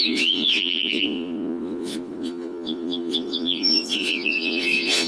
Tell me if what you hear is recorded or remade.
remade